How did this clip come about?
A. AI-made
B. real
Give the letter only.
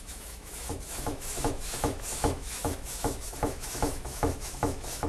A